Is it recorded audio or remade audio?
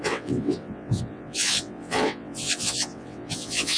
remade